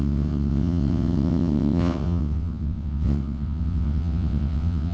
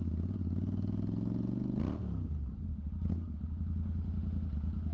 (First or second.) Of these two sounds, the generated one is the first